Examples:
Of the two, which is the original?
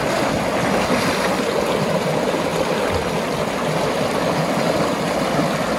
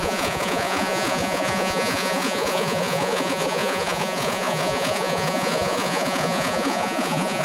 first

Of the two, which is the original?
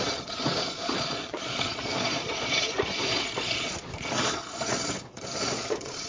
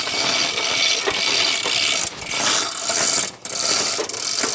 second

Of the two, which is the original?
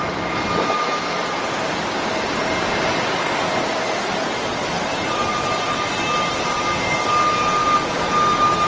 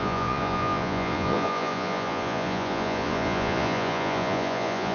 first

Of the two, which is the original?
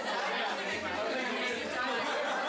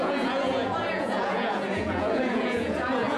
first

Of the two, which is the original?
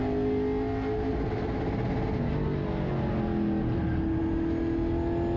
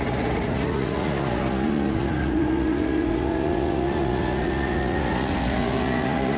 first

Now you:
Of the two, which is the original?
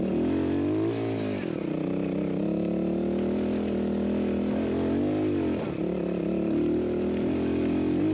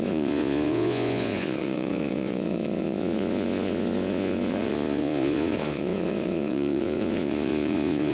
first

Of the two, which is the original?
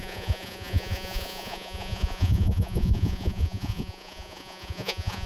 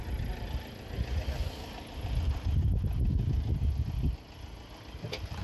second